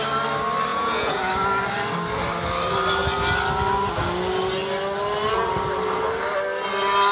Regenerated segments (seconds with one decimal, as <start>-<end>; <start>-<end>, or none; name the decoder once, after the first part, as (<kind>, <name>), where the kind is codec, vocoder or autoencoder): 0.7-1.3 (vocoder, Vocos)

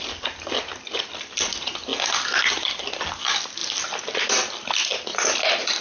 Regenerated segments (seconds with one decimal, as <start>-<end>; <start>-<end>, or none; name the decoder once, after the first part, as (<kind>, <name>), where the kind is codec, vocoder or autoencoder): none

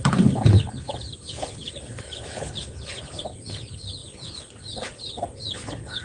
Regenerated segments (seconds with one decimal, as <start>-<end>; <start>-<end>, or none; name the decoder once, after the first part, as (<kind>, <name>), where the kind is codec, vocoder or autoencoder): 0.0-6.0 (codec, HILCodec)